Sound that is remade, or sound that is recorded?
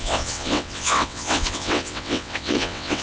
remade